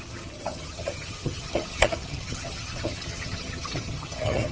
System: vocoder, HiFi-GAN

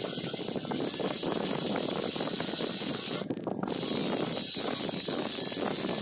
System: none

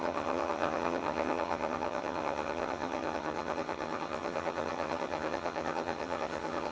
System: vocoder, HiFi-GAN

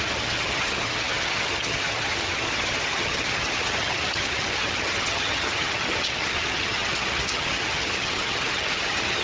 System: vocoder, HiFi-GAN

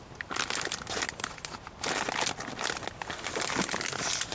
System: none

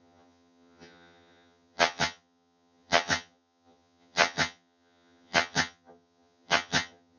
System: vocoder, HiFi-GAN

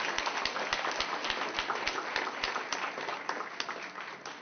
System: none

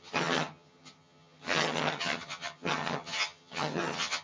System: vocoder, HiFi-GAN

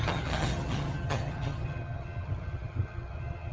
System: vocoder, HiFi-GAN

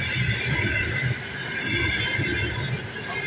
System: none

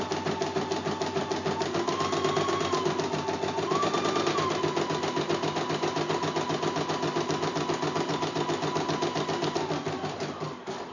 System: none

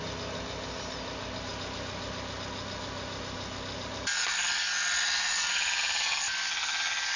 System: none